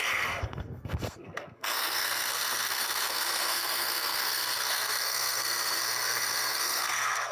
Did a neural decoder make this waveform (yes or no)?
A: yes